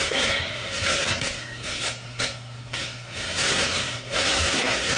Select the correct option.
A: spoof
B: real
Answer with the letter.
A